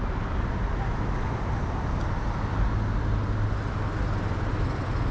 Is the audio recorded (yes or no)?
yes